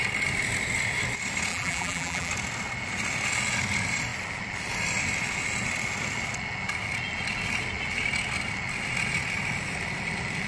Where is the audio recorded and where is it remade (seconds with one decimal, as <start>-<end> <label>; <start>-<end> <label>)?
0.0-1.5 recorded; 1.5-2.3 remade; 2.3-10.5 recorded